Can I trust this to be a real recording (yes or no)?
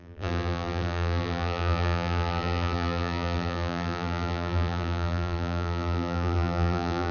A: no